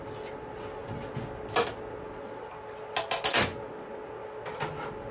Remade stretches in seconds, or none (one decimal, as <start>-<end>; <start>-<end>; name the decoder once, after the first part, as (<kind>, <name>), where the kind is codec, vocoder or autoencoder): none